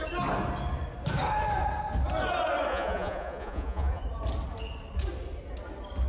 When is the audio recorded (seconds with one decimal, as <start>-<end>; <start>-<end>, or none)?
0.0-2.7; 4.0-6.1

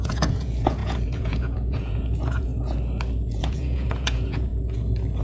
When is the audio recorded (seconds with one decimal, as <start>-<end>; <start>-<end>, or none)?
2.5-3.3; 4.5-5.2